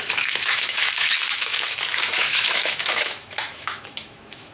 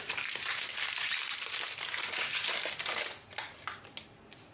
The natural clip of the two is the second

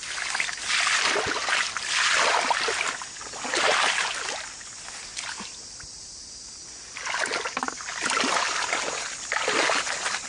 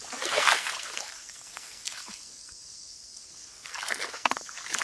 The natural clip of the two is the first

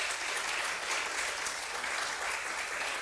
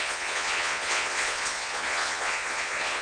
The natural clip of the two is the first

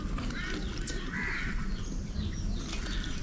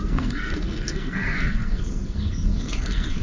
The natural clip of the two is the first